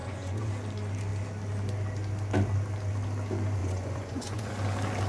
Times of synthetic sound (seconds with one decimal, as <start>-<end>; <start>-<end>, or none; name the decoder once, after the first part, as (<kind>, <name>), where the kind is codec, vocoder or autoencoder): 0.0-0.5 (vocoder, Vocos); 3.6-4.5